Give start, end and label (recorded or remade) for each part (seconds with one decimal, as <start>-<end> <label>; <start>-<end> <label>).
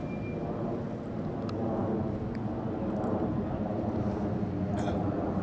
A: 0.0-5.4 recorded